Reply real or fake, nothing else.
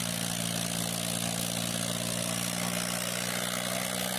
real